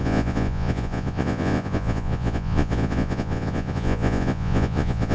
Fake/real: fake